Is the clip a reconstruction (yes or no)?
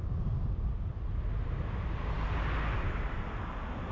no